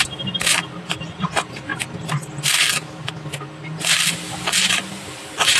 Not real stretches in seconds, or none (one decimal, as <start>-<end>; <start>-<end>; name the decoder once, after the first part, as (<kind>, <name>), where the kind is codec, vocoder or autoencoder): 0.0-1.7 (vocoder, BigVGAN v2); 5.1-5.6